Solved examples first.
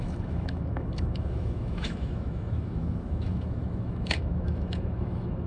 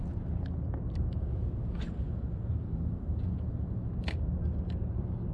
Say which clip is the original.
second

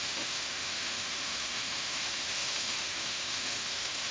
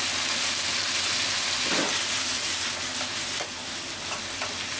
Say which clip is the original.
second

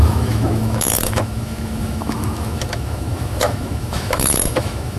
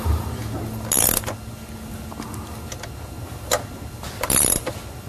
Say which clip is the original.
second